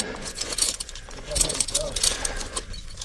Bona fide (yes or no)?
no